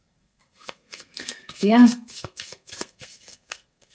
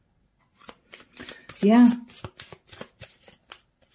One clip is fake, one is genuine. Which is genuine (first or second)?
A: second